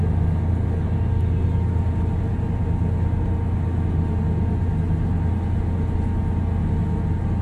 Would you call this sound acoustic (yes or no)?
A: yes